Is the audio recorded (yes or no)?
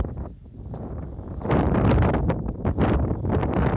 no